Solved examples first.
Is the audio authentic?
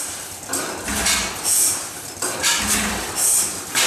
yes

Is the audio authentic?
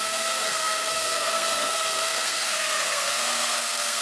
no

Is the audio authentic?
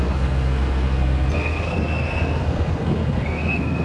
no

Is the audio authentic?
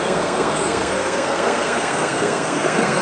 no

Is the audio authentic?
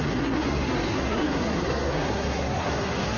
no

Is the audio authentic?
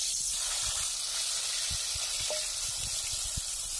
yes